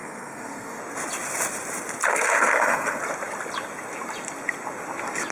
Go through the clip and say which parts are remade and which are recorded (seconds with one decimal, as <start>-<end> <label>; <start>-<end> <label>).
0.0-0.8 remade; 0.8-2.1 recorded; 2.1-3.0 remade; 3.0-5.3 recorded